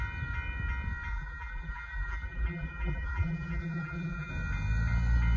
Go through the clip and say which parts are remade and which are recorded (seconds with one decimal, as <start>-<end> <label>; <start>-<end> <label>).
0.0-1.1 recorded; 1.1-4.3 remade; 4.3-5.4 recorded